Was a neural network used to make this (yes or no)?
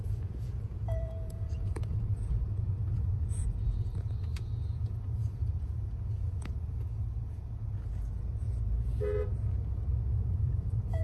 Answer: yes